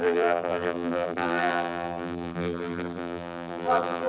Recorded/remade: remade